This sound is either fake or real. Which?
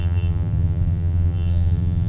fake